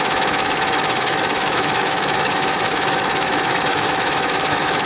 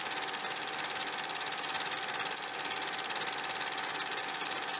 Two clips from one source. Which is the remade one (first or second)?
first